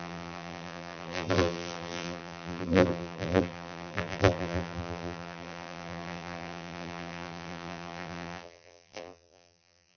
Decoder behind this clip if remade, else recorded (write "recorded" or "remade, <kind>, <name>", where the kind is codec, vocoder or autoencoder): remade, vocoder, BigVGAN v2